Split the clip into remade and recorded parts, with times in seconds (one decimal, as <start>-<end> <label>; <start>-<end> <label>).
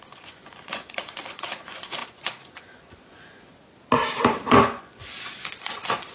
0.0-3.5 remade; 3.5-4.3 recorded; 4.3-6.1 remade